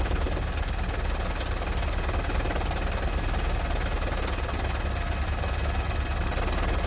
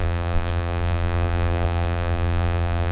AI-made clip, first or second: second